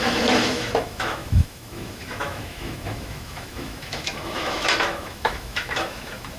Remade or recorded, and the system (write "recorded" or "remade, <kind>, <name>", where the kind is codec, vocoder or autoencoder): remade, autoencoder, DAC-VAE